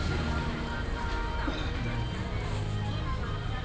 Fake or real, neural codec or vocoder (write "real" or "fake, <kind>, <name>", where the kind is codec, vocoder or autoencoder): real